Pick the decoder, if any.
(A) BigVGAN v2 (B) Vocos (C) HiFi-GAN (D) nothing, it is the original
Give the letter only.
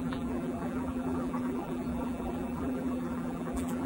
A